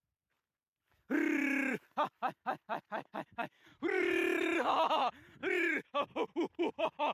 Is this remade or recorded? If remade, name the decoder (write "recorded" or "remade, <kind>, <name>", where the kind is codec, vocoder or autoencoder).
recorded